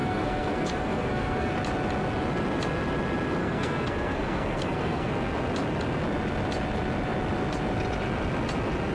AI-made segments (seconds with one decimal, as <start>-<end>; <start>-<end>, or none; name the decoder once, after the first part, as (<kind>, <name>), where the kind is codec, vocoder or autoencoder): 0.0-1.5 (codec, SNAC); 3.4-5.1